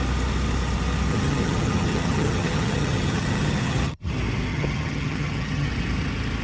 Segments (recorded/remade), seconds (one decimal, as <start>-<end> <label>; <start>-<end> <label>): 0.0-1.1 recorded; 1.1-4.1 remade; 4.1-4.5 recorded; 4.5-5.7 remade; 5.7-6.4 recorded

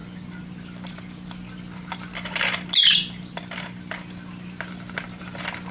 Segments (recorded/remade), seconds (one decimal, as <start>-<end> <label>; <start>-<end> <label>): 0.0-5.7 recorded

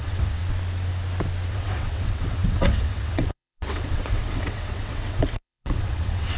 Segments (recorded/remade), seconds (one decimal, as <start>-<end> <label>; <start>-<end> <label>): 0.0-0.4 remade; 0.4-1.5 recorded; 1.5-6.4 remade

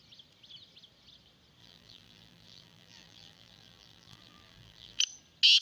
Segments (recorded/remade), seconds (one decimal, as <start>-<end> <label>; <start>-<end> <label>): 0.0-1.6 recorded; 1.6-5.0 remade; 5.0-5.6 recorded

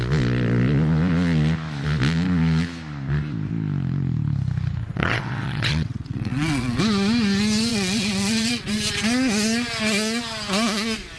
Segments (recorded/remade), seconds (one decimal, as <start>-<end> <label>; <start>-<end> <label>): 0.0-4.8 recorded; 4.8-6.8 remade; 6.8-7.7 recorded; 7.7-8.7 remade; 8.7-11.2 recorded